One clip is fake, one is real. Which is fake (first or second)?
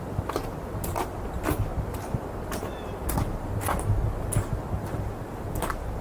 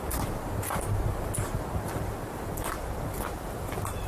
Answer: second